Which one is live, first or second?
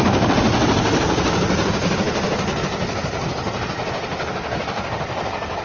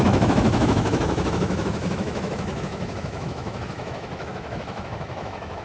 first